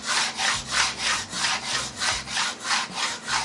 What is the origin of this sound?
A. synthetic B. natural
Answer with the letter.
B